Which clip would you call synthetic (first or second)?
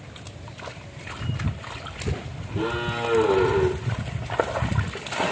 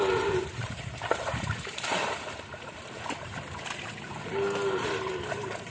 second